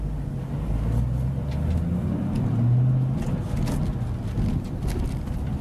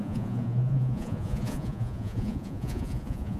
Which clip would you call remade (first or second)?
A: second